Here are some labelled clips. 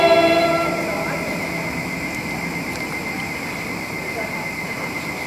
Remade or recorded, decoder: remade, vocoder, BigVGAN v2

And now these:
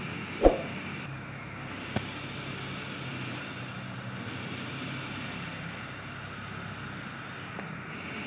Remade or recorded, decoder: recorded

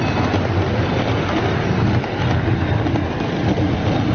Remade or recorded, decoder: recorded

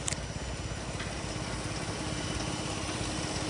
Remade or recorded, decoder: recorded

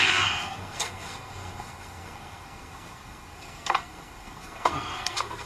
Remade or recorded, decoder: remade, codec, SNAC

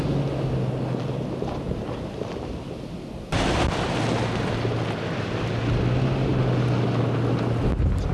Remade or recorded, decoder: recorded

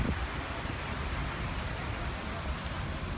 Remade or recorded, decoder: recorded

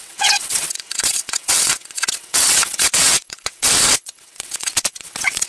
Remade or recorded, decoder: remade, vocoder, WaveNeXt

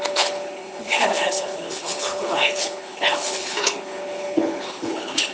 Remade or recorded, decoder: remade, codec, HILCodec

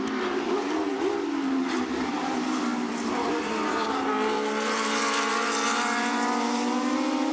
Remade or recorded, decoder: remade, vocoder, BigVGAN v2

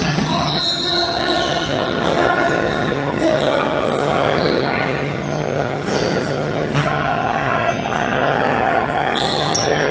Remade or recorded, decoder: remade, vocoder, HiFi-GAN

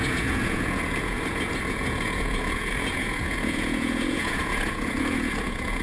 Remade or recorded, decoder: remade, vocoder, Vocos